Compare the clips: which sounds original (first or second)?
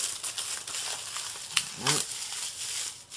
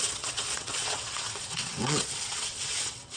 first